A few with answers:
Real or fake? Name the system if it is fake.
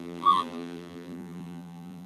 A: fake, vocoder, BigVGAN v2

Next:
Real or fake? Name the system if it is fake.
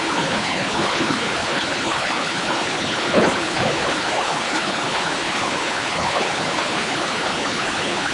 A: fake, codec, HILCodec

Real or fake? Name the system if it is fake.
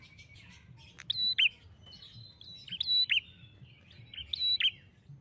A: real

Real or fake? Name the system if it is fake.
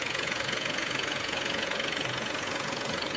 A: fake, vocoder, Vocos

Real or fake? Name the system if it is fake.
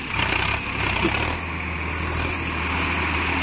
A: real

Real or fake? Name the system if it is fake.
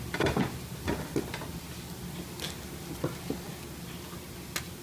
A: real